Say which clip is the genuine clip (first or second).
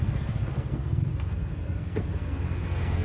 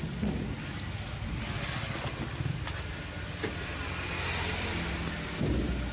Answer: second